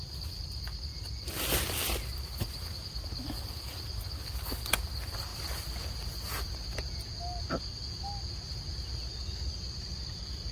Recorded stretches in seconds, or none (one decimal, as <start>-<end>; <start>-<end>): 0.0-10.5